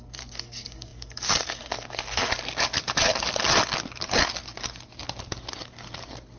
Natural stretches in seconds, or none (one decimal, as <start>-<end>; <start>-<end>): 2.3-6.4